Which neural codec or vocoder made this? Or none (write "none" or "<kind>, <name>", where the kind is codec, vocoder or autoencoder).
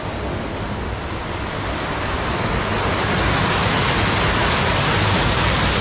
none